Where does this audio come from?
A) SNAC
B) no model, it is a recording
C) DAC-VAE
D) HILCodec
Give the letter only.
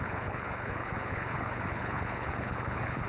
D